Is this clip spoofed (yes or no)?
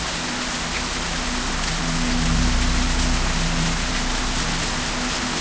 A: no